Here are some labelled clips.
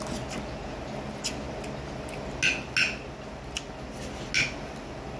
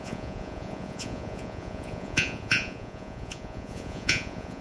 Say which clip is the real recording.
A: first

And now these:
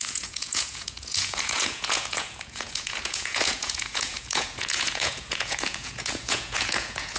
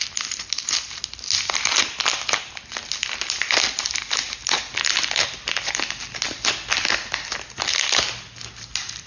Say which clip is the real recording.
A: second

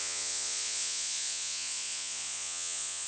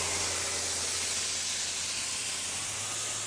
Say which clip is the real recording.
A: second